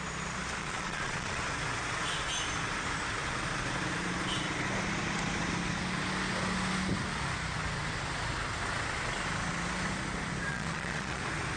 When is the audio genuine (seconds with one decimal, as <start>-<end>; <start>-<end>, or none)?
0.0-0.6; 1.4-10.5; 11.2-11.6